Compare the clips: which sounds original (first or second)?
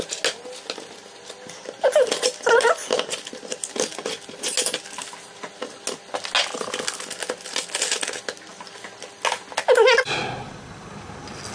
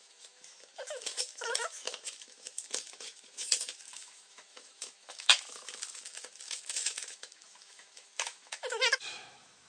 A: first